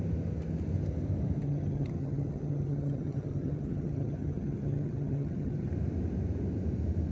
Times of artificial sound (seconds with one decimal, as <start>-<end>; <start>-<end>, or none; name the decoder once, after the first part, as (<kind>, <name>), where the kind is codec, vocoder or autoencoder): 1.4-5.7 (vocoder, HiFi-GAN)